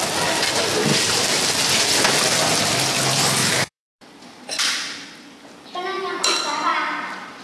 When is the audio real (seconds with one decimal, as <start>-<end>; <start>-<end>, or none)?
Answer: 0.0-0.9; 1.5-3.4; 4.2-7.4